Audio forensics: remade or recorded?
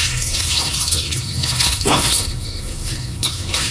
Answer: remade